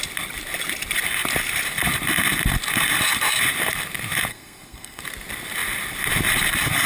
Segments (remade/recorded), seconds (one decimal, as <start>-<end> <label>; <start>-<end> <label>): 0.0-4.3 recorded; 4.3-5.0 remade; 5.0-6.9 recorded